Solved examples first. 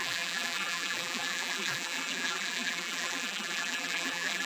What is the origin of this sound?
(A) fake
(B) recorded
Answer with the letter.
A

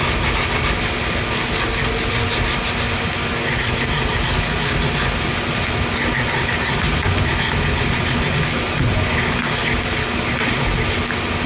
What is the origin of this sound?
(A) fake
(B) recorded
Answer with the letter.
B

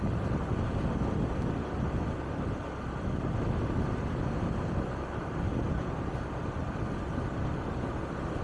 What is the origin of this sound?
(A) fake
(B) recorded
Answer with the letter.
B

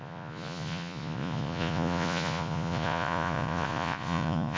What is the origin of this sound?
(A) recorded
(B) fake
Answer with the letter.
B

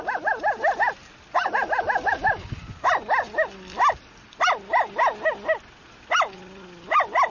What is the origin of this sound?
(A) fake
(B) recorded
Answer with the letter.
B